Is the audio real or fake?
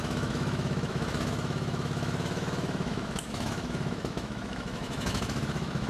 fake